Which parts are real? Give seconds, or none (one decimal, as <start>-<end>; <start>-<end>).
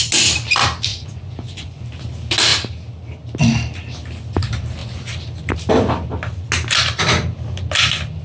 0.0-0.9; 1.8-8.2